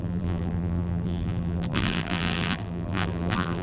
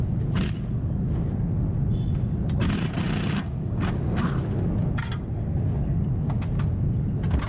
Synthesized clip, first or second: first